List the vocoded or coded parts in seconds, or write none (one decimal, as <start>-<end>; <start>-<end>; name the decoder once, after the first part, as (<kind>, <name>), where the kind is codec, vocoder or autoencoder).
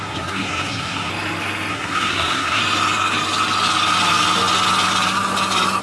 0.0-1.1 (codec, SNAC); 1.7-2.6